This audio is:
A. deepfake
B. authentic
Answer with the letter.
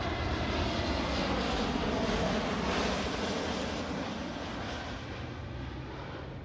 B